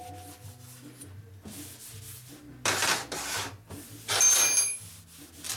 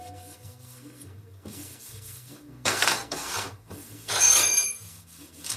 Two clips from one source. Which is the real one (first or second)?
first